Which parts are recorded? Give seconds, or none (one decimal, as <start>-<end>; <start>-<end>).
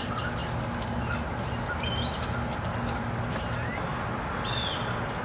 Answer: 0.0-5.2